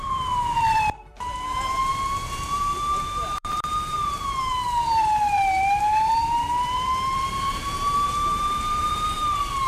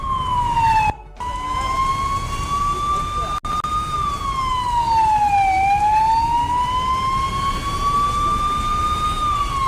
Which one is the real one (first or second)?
second